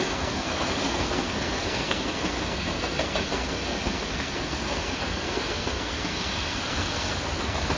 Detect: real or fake fake